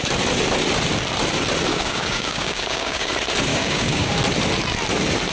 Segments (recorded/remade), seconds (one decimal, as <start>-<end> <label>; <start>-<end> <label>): 0.0-1.7 recorded; 1.7-3.1 remade; 3.1-3.5 recorded; 3.5-4.1 remade; 4.1-5.3 recorded